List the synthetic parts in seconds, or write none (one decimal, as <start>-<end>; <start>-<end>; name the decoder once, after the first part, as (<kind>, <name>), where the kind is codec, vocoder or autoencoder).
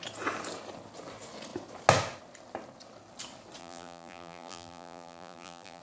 3.6-5.8 (vocoder, BigVGAN v2)